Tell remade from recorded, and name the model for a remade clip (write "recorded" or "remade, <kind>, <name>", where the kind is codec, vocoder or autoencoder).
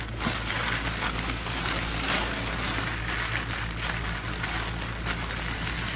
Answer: recorded